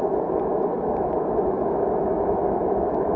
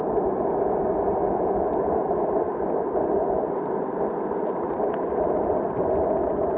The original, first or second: second